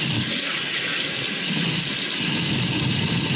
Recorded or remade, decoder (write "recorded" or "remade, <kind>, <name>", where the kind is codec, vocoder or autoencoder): recorded